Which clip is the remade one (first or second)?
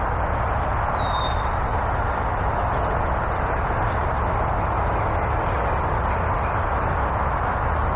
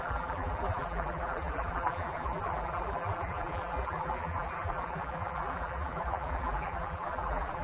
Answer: second